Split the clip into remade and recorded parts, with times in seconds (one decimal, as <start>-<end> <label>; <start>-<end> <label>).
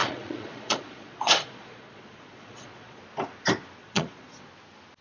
0.0-3.0 remade; 3.0-3.8 recorded; 3.8-4.5 remade; 4.5-5.0 recorded